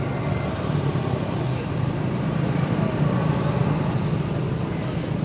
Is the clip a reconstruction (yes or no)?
yes